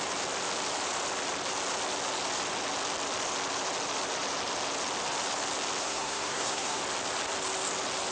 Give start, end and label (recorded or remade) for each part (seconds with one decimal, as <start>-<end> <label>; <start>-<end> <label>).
0.0-5.8 recorded; 5.8-6.8 remade; 6.8-8.1 recorded

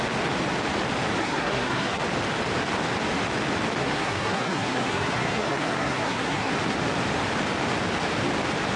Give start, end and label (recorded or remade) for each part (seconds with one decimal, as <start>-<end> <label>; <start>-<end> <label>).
0.0-1.2 recorded; 1.2-2.0 remade; 2.0-3.8 recorded; 3.8-6.5 remade; 6.5-8.8 recorded

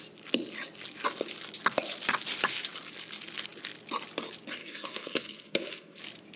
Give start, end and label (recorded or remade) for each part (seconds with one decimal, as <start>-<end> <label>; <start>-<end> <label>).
0.0-4.6 recorded; 4.6-6.0 remade; 6.0-6.4 recorded

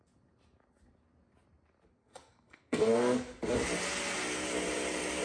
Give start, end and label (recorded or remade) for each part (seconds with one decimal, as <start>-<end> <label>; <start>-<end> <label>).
0.0-2.0 recorded; 2.0-3.4 remade; 3.4-5.2 recorded

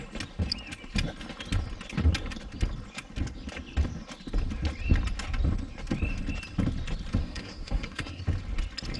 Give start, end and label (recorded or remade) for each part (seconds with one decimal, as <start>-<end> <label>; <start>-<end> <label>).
0.0-7.2 recorded; 7.2-8.2 remade; 8.2-9.0 recorded

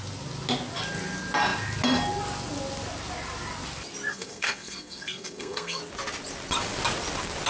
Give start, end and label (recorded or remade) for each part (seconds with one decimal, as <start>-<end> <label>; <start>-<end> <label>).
0.0-4.1 recorded; 4.1-5.8 remade; 5.8-7.5 recorded

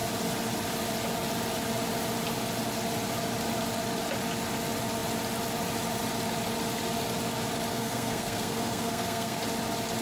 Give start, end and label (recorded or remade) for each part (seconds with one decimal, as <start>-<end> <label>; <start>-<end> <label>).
0.0-7.7 recorded; 7.7-9.4 remade; 9.4-10.0 recorded